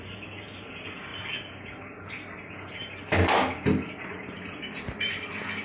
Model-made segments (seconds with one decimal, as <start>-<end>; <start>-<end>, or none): none